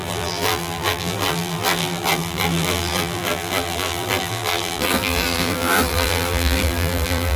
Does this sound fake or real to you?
fake